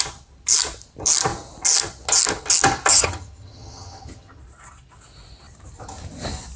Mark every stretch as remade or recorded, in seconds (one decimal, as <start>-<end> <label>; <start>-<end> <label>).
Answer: 0.0-2.9 recorded; 2.9-4.4 remade; 4.4-6.6 recorded